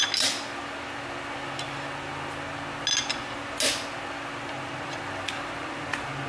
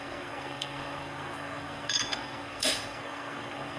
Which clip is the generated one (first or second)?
second